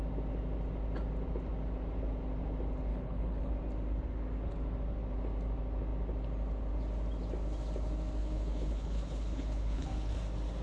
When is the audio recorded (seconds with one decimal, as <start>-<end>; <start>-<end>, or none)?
0.0-2.9; 3.5-8.2; 10.1-10.6